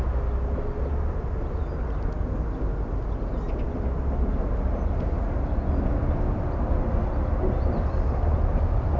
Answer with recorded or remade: recorded